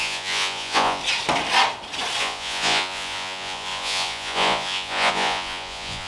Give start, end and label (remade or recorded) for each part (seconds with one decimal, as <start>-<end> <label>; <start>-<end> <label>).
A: 0.0-1.0 remade; 1.0-2.2 recorded; 2.2-6.1 remade